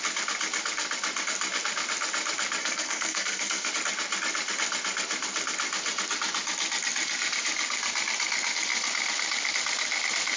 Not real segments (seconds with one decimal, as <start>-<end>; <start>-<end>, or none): 2.6-3.7